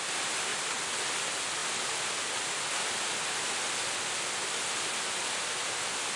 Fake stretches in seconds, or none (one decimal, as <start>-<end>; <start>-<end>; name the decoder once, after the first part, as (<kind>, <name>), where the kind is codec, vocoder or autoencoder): none